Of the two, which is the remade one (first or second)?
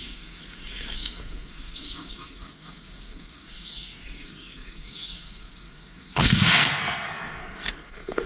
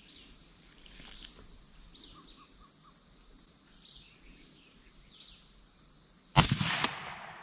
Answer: first